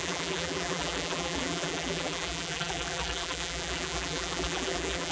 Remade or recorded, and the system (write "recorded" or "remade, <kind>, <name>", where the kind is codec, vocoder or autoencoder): remade, vocoder, BigVGAN v2